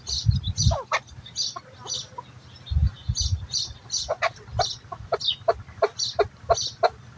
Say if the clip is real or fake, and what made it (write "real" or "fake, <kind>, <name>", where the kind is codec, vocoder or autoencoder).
real